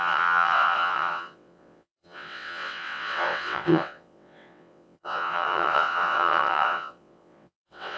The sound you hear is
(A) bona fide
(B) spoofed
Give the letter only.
B